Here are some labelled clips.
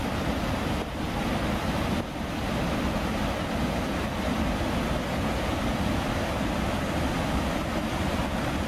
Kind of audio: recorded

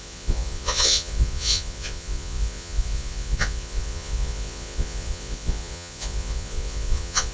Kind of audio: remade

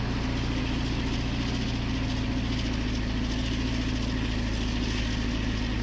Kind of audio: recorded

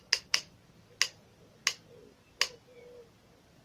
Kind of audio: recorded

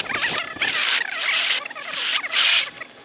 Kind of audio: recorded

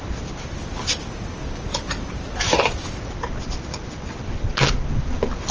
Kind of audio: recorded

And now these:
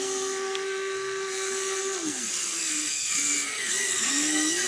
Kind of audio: remade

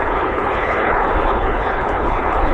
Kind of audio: remade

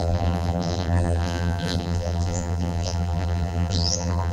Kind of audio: remade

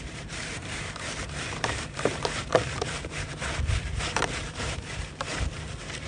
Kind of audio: remade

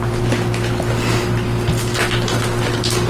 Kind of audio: recorded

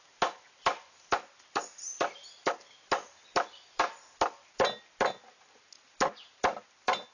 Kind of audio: recorded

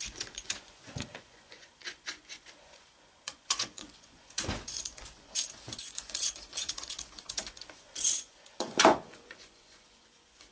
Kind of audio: remade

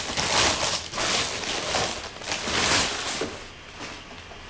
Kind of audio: recorded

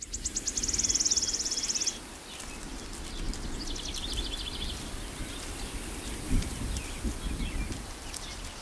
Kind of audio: recorded